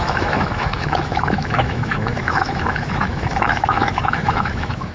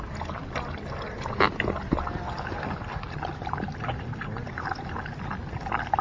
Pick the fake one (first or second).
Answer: first